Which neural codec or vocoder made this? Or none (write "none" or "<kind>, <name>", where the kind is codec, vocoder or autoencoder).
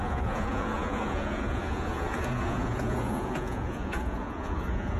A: vocoder, Vocos